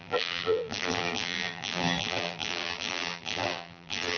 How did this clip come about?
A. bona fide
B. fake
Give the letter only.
B